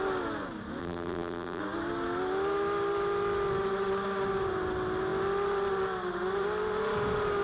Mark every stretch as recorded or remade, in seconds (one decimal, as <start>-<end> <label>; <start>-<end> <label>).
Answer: 0.0-0.8 recorded; 0.8-1.6 remade; 1.6-7.4 recorded